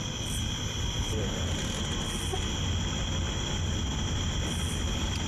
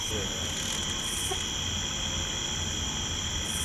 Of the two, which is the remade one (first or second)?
first